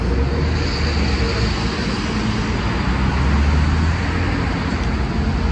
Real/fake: real